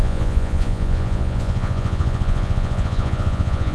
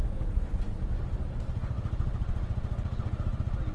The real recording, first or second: second